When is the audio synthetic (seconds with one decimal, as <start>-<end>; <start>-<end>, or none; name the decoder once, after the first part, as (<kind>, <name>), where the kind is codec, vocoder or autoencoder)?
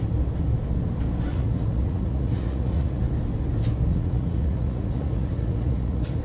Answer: 1.3-3.0 (vocoder, Vocos); 3.9-6.2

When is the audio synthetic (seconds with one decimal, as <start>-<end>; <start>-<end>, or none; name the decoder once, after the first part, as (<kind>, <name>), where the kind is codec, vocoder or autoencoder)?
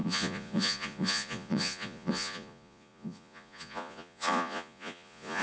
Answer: 0.0-5.4 (vocoder, Vocos)